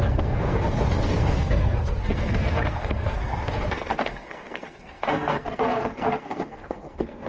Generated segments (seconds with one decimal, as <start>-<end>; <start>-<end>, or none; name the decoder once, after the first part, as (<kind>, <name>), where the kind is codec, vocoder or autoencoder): 0.0-7.3 (codec, SNAC)